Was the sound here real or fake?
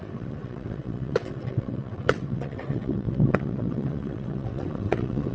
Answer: fake